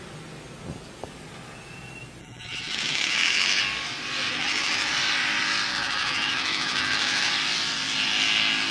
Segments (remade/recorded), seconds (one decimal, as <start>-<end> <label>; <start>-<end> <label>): 0.0-2.2 recorded; 2.2-3.6 remade; 3.6-4.3 recorded; 4.3-4.9 remade; 4.9-5.7 recorded; 5.7-7.3 remade; 7.3-8.7 recorded